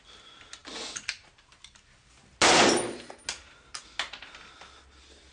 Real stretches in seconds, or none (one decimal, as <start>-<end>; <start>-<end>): 0.0-5.3